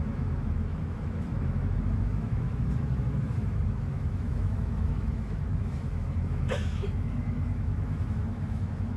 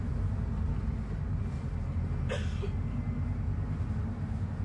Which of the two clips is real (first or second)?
second